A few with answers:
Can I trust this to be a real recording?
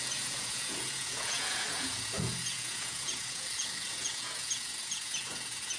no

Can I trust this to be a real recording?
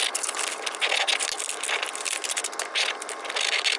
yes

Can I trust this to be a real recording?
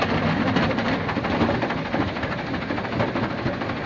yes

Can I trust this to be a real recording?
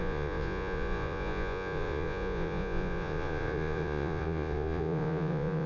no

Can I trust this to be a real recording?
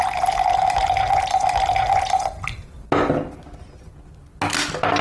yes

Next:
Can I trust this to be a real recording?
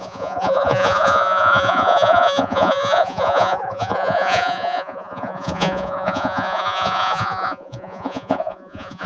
no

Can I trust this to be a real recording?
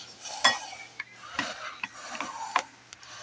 yes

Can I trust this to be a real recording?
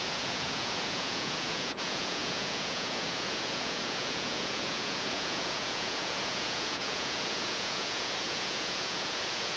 no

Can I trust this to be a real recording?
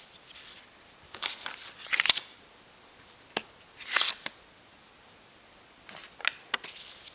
yes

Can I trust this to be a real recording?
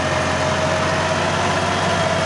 yes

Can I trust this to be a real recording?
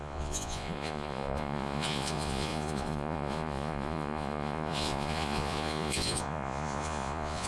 no